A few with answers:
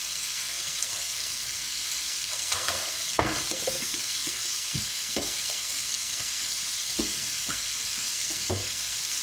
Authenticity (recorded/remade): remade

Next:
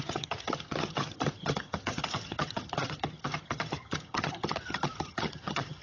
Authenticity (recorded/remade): remade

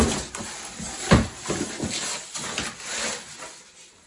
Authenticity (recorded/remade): recorded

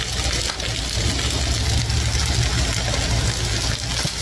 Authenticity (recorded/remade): recorded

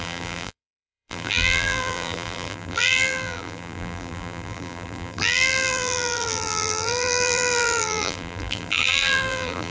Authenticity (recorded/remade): remade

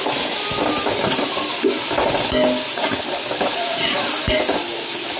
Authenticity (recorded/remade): recorded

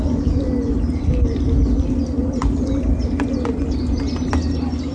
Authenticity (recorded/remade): recorded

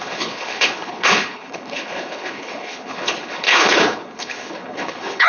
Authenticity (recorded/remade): remade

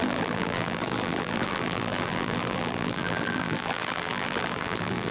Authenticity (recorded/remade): remade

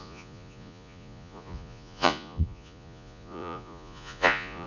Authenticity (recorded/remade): remade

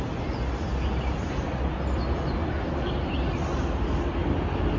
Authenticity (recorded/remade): recorded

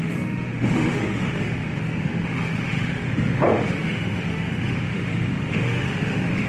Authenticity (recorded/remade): remade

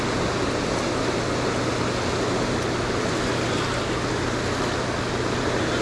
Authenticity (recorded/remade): recorded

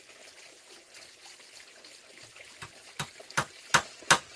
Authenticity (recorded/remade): recorded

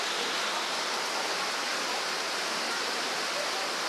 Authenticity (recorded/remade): recorded